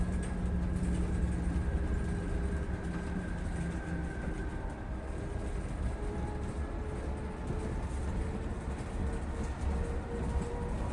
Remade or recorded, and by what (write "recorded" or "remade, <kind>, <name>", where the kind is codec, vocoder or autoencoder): recorded